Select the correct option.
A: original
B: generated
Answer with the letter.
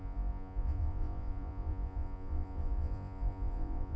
B